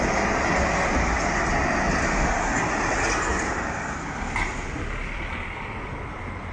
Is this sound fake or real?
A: real